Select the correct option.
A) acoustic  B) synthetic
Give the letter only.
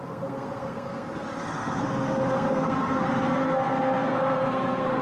B